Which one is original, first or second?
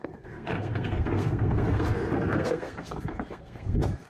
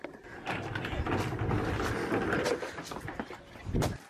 second